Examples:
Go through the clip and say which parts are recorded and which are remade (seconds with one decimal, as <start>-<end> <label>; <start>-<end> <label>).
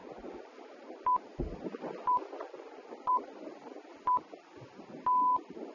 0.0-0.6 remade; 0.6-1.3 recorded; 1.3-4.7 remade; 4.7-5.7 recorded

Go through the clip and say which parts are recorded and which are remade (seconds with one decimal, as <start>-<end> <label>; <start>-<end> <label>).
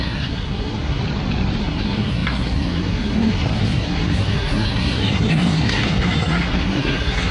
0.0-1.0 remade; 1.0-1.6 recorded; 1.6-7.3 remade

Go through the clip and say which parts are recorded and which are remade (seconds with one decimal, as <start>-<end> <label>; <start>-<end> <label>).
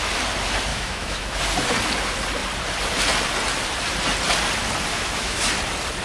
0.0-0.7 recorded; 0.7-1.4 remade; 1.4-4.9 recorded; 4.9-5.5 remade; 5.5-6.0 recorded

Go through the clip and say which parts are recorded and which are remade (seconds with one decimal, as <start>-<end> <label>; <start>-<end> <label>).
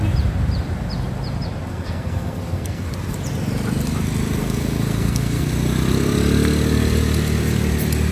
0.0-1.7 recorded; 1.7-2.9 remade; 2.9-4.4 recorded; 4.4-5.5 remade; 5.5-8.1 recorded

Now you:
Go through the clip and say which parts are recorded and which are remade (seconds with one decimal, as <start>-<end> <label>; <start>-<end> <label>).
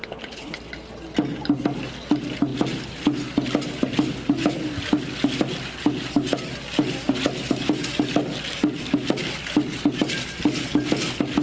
0.0-0.6 remade; 0.6-11.4 recorded